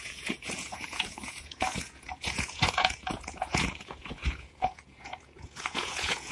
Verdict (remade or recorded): remade